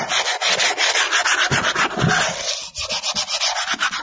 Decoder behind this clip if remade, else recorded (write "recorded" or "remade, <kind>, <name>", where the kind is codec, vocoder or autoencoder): remade, vocoder, BigVGAN v2